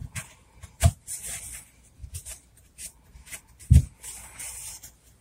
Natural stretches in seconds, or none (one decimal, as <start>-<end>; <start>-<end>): 1.4-2.0; 3.4-5.2